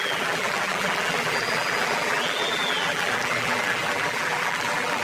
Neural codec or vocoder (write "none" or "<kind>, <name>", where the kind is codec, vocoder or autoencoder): vocoder, BigVGAN v2